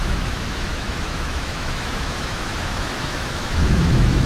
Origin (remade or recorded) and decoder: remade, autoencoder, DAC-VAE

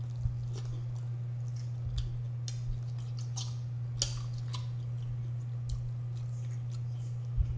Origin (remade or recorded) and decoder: recorded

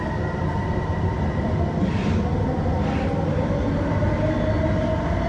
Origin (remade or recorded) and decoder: recorded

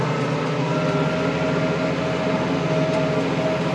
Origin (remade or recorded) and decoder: recorded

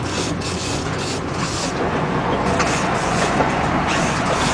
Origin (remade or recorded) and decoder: remade, vocoder, Vocos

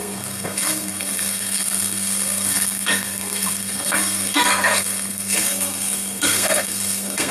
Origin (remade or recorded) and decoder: remade, codec, SNAC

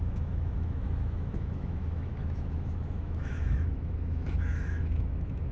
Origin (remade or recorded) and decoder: remade, autoencoder, DAC-VAE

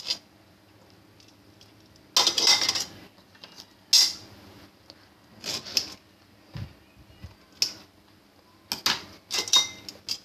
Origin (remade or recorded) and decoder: recorded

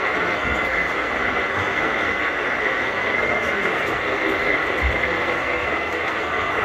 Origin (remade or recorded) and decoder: remade, codec, SNAC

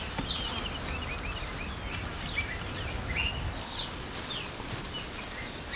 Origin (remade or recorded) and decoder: recorded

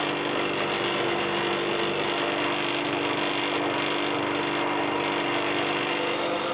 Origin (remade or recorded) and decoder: recorded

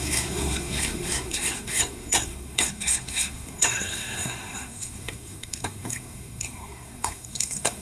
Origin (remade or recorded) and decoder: remade, codec, SNAC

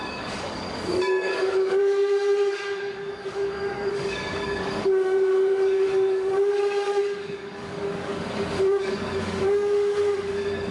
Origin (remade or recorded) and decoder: remade, codec, DAC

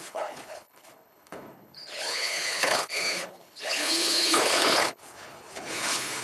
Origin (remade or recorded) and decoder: remade, codec, HILCodec